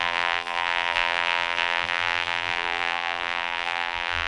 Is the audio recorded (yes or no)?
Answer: no